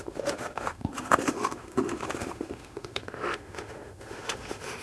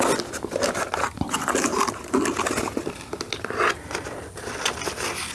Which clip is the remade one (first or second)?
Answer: first